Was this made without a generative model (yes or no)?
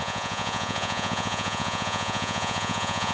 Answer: no